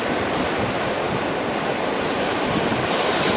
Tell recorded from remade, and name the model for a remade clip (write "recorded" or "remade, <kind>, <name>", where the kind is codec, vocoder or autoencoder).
recorded